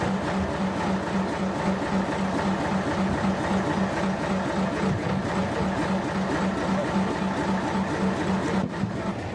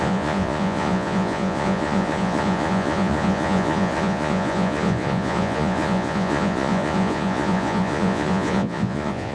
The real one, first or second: first